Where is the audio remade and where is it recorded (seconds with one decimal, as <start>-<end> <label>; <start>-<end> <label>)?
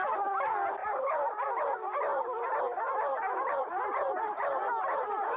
0.0-2.1 remade; 2.1-3.6 recorded; 3.6-5.4 remade